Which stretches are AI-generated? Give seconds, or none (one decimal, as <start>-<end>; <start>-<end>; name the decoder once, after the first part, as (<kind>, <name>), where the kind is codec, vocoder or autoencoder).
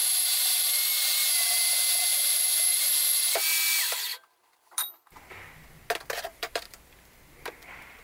0.0-2.9 (vocoder, BigVGAN v2); 4.1-4.8; 6.3-6.8